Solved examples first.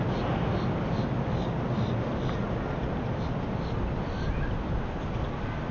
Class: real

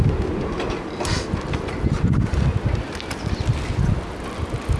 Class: real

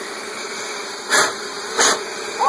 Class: real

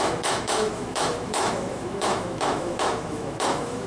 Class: fake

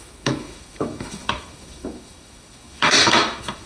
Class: fake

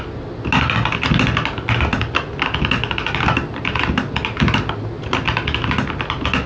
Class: real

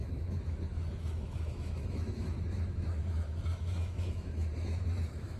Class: fake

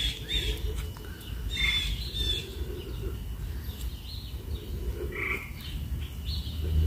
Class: real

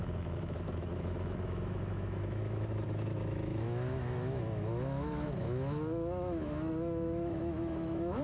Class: fake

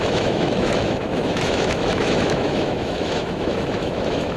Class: fake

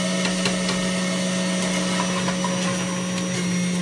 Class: real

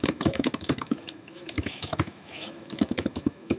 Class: fake